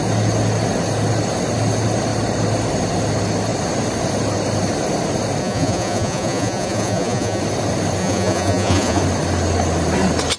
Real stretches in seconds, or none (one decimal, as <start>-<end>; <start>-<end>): 0.0-5.4; 7.4-8.0; 9.0-10.4